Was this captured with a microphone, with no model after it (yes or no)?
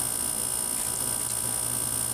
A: yes